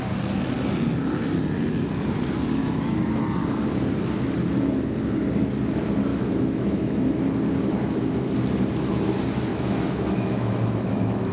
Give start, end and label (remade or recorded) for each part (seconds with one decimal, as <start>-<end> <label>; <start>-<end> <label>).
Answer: 0.0-2.6 recorded; 2.6-3.2 remade; 3.2-6.1 recorded; 6.1-7.2 remade; 7.2-9.5 recorded; 9.5-11.3 remade